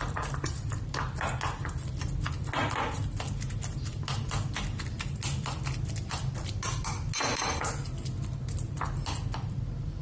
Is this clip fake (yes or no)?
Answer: no